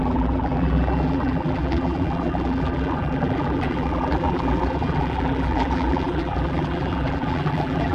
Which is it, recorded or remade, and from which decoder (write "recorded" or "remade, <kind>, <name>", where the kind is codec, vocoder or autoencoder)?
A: remade, vocoder, BigVGAN v2